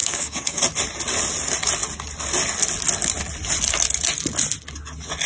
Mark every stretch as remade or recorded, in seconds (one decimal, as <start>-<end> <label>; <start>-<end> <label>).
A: 0.0-0.6 remade; 0.6-5.3 recorded